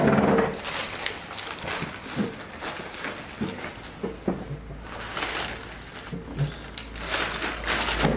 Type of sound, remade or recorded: recorded